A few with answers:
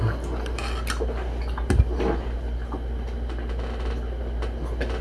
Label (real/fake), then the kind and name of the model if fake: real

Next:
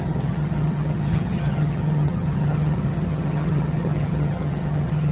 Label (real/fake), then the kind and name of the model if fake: fake, vocoder, HiFi-GAN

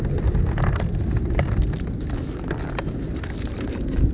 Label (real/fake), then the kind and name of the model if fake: real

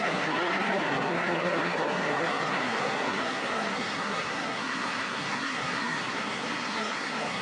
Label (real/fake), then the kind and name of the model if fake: fake, codec, SNAC